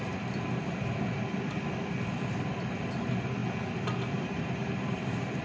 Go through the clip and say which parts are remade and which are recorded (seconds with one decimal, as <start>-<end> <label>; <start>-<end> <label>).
0.0-3.4 remade; 3.4-4.1 recorded; 4.1-5.4 remade